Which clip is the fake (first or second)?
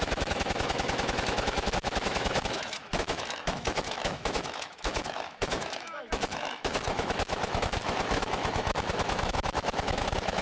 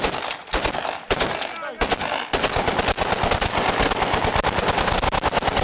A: first